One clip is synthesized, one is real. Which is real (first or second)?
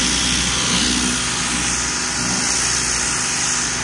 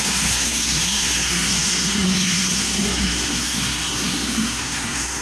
first